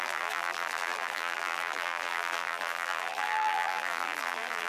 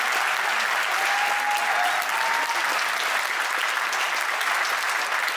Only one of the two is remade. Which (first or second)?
first